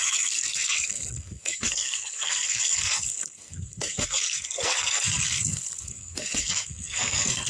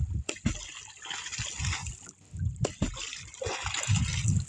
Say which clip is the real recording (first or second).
second